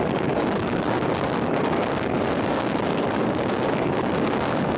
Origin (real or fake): fake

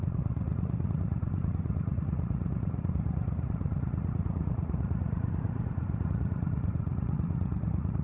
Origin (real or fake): fake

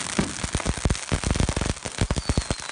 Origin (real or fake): real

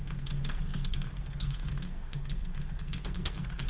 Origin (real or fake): fake